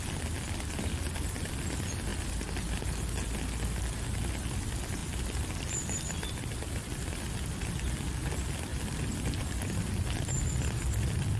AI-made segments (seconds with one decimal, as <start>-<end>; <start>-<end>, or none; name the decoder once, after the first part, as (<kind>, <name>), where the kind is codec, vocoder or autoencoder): 5.0-8.1 (vocoder, BigVGAN v2)